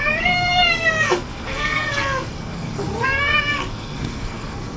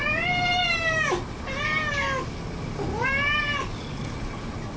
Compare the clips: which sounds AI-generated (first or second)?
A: first